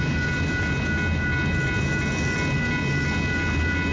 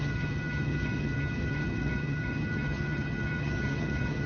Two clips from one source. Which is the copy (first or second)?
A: second